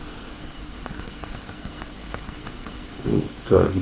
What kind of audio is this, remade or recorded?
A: remade